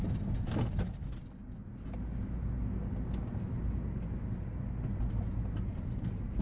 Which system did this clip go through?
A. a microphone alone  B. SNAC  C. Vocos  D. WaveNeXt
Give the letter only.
A